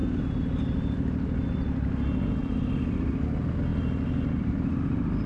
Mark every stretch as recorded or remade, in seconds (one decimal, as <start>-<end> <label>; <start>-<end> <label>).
0.0-5.3 recorded

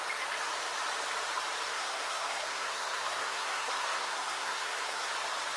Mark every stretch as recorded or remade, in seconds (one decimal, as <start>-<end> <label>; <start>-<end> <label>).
0.0-1.7 recorded; 1.7-5.1 remade; 5.1-5.6 recorded

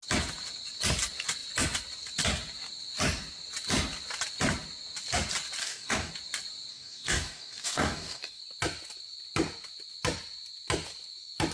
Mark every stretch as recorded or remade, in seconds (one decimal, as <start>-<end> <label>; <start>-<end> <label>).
0.0-5.6 recorded; 5.6-6.1 remade; 6.1-6.7 recorded; 6.7-8.4 remade; 8.4-11.5 recorded

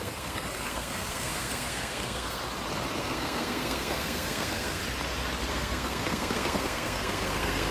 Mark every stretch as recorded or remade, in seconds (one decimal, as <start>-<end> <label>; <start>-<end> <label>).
0.0-2.4 remade; 2.4-3.0 recorded; 3.0-4.8 remade; 4.8-5.5 recorded; 5.5-7.7 remade

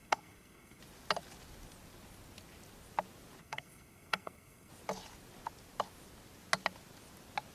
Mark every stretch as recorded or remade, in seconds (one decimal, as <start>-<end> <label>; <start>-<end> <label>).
0.0-0.8 remade; 0.8-3.4 recorded; 3.4-4.7 remade; 4.7-7.5 recorded

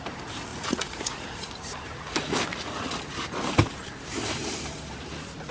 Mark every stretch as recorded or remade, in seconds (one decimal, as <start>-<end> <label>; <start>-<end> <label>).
0.0-0.5 recorded; 0.5-1.5 remade; 1.5-2.5 recorded; 2.5-3.0 remade; 3.0-5.5 recorded

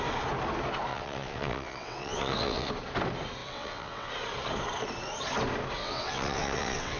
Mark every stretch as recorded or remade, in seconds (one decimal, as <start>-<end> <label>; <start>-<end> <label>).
0.0-0.9 recorded; 0.9-2.7 remade; 2.7-3.4 recorded; 3.4-4.1 remade; 4.1-5.8 recorded; 5.8-7.0 remade

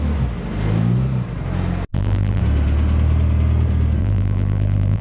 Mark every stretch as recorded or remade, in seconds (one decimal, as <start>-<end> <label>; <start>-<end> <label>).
0.0-1.9 recorded; 1.9-2.4 remade; 2.4-4.0 recorded; 4.0-5.0 remade